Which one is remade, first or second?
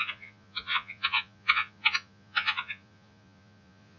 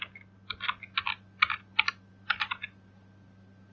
first